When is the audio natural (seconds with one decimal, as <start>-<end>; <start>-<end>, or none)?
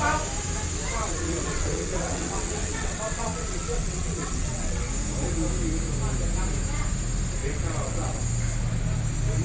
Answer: 0.0-1.0; 4.9-7.4; 8.2-9.4